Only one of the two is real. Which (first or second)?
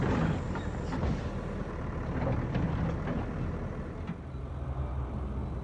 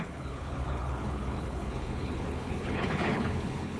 first